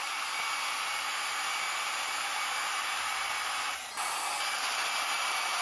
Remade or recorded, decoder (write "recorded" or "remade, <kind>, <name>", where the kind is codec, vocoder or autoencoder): recorded